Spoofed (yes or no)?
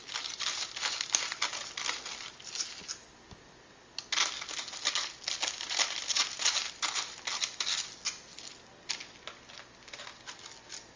no